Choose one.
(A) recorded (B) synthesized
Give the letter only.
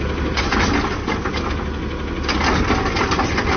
A